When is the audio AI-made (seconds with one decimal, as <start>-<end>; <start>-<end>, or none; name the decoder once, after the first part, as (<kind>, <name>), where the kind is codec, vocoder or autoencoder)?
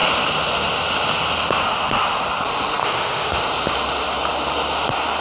2.8-3.4 (autoencoder, DAC-VAE)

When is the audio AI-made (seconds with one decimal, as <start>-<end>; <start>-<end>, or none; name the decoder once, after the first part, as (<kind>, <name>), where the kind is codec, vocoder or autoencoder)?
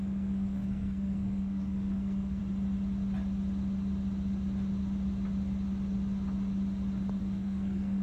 0.0-2.4 (codec, SNAC); 7.2-8.0